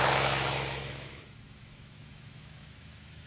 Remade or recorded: remade